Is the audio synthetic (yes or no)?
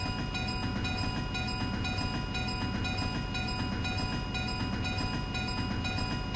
no